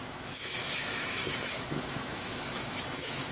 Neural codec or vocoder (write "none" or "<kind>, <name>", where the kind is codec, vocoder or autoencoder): autoencoder, DAC-VAE